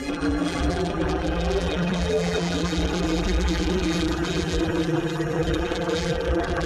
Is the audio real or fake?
fake